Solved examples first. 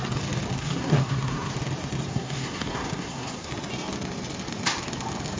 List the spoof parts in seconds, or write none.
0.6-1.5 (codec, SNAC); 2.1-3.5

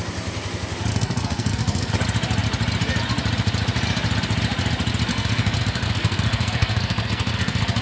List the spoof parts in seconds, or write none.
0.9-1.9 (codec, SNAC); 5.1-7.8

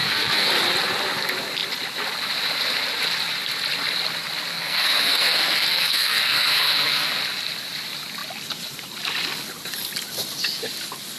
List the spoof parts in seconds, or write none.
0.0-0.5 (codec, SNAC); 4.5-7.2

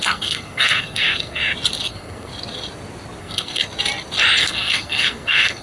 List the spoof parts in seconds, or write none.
0.0-1.4 (codec, SNAC); 1.9-2.3; 3.2-3.6; 4.4-5.6